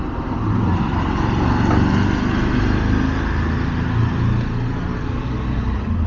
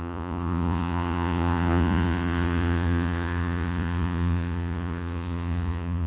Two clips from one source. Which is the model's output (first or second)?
second